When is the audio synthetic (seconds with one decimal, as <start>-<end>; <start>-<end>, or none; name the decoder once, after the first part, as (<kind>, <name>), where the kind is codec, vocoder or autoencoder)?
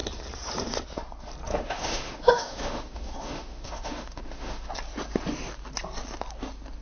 1.5-4.7 (autoencoder, DAC-VAE)